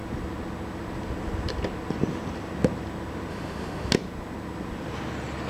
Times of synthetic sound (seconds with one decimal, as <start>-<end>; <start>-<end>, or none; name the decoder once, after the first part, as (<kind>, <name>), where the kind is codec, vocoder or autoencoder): 3.3-3.9 (autoencoder, DAC-VAE)